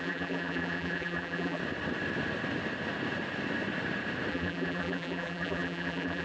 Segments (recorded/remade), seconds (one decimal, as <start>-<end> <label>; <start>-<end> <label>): 0.0-1.6 remade; 1.6-4.3 recorded; 4.3-6.2 remade